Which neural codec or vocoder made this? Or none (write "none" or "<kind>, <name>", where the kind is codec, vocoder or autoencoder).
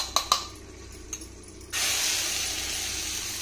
none